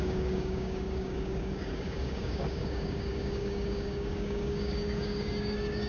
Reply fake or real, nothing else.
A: fake